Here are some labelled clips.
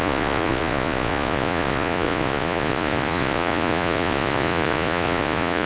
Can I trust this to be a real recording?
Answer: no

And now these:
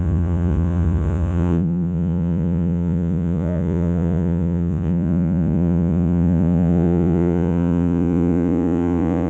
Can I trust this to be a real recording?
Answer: no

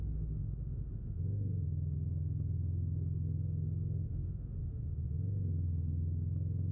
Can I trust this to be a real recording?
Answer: no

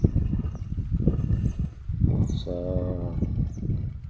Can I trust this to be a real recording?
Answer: yes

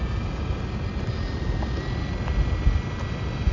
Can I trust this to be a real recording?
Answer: yes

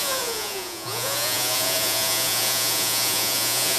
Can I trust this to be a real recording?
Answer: no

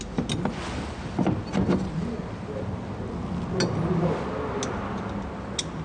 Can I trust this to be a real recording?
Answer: yes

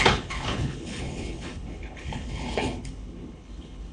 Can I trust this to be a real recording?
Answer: no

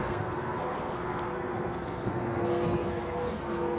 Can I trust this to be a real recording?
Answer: no